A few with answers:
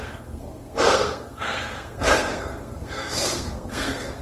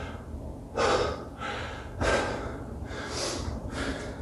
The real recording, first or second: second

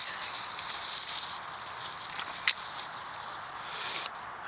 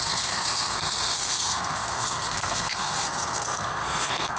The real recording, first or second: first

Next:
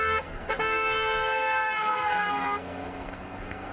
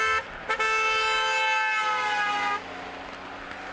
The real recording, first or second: second